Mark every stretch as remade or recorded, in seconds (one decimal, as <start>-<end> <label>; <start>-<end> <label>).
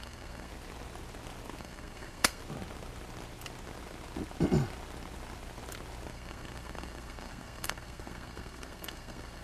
0.0-0.5 remade; 0.5-1.6 recorded; 1.6-2.4 remade; 2.4-6.1 recorded; 6.1-9.4 remade